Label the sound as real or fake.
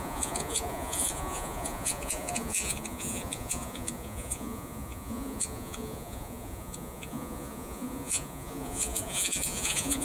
fake